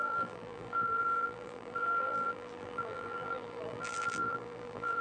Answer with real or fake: fake